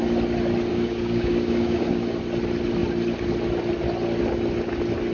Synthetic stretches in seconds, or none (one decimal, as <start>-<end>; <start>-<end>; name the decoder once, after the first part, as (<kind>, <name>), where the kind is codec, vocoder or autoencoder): 0.7-2.2 (codec, DAC)